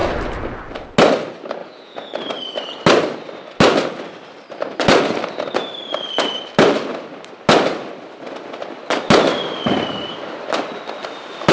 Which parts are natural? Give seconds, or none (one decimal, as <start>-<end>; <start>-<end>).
0.0-1.6; 2.2-11.5